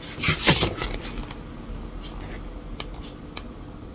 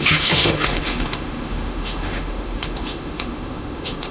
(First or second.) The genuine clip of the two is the first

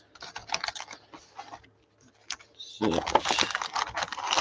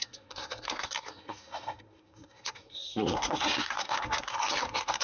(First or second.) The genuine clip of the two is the first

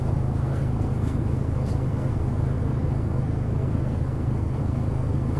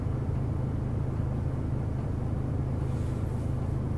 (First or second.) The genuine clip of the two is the second